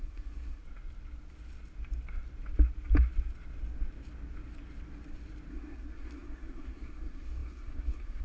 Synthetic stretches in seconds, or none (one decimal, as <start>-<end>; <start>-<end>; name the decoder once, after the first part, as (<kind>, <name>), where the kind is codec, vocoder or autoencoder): 0.0-0.6 (codec, SNAC); 5.5-8.2